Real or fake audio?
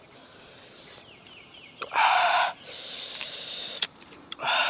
fake